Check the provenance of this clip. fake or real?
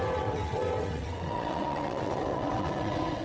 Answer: fake